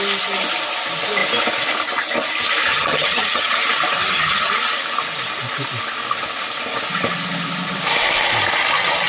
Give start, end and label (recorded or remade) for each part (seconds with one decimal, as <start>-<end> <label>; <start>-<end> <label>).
0.0-2.7 recorded; 2.7-3.5 remade; 3.5-4.0 recorded; 4.0-4.5 remade; 4.5-9.1 recorded